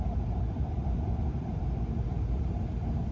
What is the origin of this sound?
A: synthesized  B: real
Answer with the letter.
A